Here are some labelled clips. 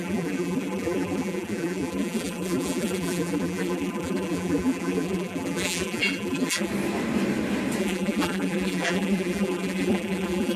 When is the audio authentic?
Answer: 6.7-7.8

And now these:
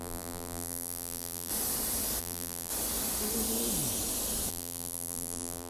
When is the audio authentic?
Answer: 1.5-2.2; 2.7-4.5

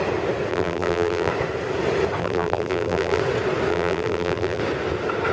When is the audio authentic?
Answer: 0.0-0.5; 1.3-2.2; 3.2-3.7; 4.6-5.3

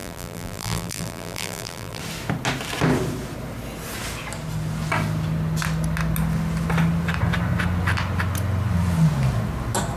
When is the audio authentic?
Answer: 2.0-10.0